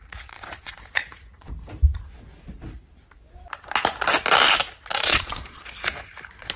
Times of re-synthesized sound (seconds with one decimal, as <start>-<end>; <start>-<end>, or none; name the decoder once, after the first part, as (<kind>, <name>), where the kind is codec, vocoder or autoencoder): 0.0-1.5 (vocoder, Vocos); 4.9-5.6